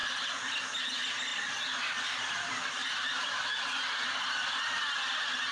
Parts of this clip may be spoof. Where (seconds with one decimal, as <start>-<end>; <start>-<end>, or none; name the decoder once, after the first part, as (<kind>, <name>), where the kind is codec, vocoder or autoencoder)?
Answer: none